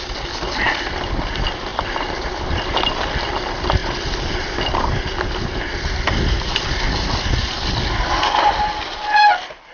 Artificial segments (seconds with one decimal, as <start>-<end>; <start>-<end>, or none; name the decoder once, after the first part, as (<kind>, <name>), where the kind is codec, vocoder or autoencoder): none